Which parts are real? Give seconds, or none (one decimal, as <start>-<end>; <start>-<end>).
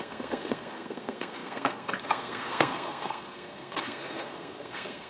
none